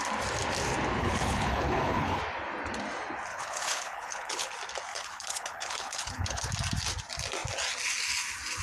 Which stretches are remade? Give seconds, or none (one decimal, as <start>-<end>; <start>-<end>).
1.0-2.2; 3.3-4.5; 4.9-6.5